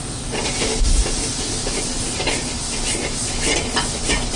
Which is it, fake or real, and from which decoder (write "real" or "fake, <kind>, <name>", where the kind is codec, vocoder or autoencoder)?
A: real